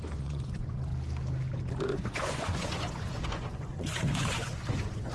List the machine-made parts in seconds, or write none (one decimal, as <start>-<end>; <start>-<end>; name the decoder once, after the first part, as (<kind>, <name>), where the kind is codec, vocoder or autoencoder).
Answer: 0.0-0.9 (vocoder, Vocos); 1.8-5.1